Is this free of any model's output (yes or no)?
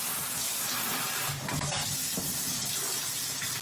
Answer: yes